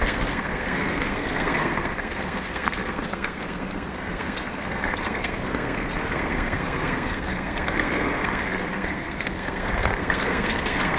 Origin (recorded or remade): remade